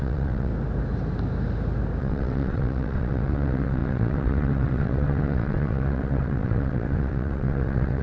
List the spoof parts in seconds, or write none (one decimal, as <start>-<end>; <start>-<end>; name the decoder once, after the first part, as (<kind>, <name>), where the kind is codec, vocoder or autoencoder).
0.0-0.5 (vocoder, WaveNeXt); 2.0-8.0